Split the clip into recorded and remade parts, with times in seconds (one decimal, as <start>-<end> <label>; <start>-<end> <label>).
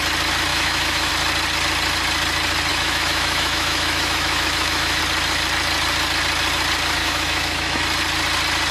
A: 0.0-0.5 recorded; 0.5-1.1 remade; 1.1-2.7 recorded; 2.7-5.0 remade; 5.0-7.0 recorded; 7.0-7.8 remade; 7.8-8.7 recorded